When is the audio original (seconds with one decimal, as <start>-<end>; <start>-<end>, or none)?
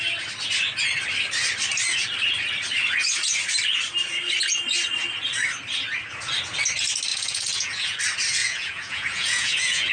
0.0-7.1; 8.0-8.4